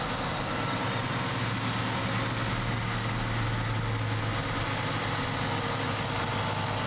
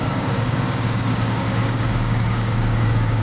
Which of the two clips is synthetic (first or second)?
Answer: second